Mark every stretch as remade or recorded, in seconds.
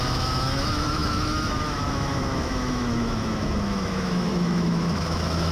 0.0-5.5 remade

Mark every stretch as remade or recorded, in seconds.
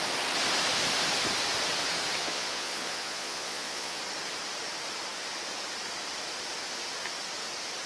0.0-2.2 recorded; 2.2-4.0 remade; 4.0-7.9 recorded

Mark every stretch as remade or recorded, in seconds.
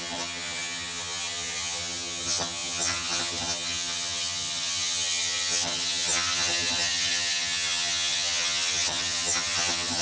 0.0-10.0 remade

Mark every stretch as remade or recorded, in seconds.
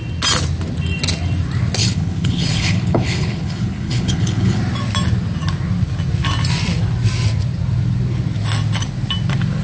0.0-1.8 recorded; 1.8-4.6 remade; 4.6-9.6 recorded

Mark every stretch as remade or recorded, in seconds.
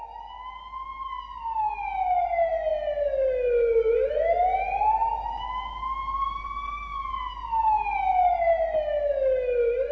0.0-9.9 recorded